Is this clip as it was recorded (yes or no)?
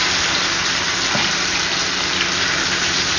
yes